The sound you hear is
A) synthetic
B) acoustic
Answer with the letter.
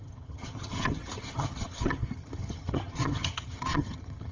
A